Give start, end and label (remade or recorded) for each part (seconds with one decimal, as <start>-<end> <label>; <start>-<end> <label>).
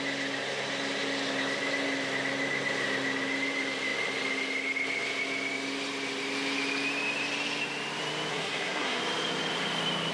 0.0-8.3 recorded; 8.3-9.0 remade; 9.0-10.1 recorded